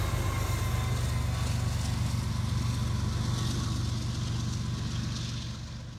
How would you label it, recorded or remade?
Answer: recorded